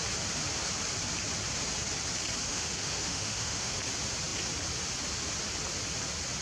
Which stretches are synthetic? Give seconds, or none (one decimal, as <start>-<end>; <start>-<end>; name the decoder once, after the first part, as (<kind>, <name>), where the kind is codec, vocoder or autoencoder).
2.5-3.7 (autoencoder, DAC-VAE)